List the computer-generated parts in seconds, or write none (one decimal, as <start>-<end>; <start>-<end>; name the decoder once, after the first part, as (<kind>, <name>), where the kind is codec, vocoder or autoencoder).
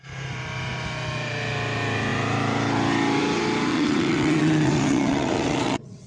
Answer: 3.7-6.1 (vocoder, WaveNeXt)